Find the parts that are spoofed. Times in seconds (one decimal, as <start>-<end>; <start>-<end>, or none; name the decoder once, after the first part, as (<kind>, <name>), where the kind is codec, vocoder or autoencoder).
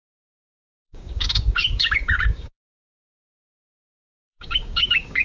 0.0-5.2 (codec, DAC)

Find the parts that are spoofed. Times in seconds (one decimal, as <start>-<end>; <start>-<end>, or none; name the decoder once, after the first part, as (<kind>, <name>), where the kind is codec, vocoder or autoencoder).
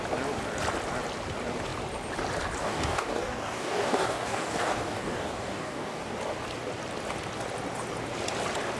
2.6-6.1 (codec, DAC)